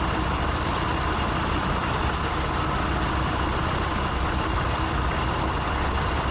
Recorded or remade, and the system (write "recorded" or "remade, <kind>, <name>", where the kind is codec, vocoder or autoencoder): remade, vocoder, BigVGAN v2